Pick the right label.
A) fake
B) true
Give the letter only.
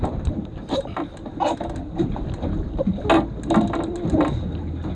B